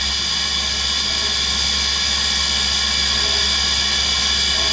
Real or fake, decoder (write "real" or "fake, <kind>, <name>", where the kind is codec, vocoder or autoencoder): real